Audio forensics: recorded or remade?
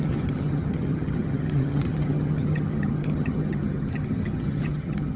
remade